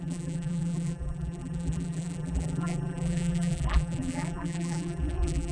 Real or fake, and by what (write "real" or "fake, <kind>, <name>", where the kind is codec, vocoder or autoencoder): fake, vocoder, BigVGAN v2